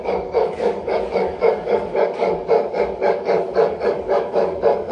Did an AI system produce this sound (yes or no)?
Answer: yes